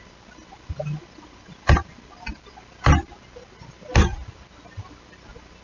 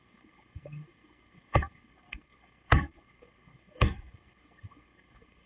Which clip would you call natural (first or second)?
first